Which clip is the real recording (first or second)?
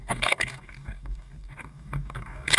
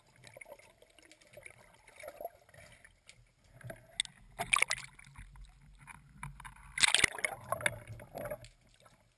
second